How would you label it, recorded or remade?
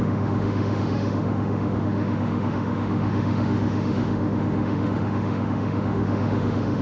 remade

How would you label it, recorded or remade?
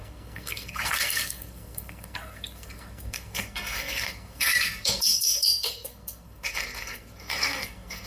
remade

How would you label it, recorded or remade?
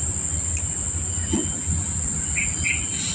recorded